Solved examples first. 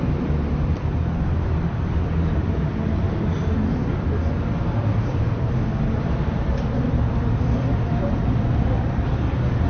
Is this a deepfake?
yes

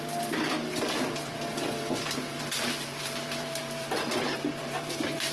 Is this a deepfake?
yes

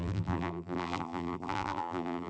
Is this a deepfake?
yes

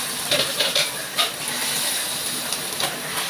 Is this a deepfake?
no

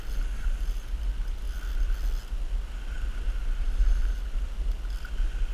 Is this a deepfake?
no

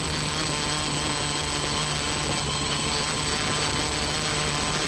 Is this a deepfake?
no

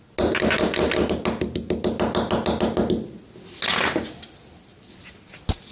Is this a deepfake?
no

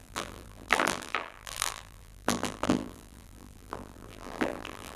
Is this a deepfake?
yes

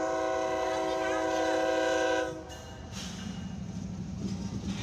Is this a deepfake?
no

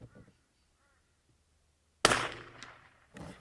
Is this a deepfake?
no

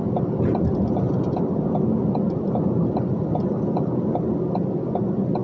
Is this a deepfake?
no